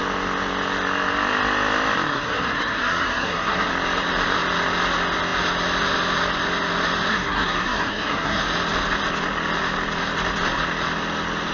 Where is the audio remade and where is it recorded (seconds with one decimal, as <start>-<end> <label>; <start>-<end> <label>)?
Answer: 0.0-2.1 recorded; 2.1-3.7 remade; 3.7-7.1 recorded; 7.1-8.4 remade; 8.4-11.5 recorded